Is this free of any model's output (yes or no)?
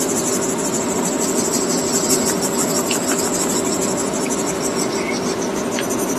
yes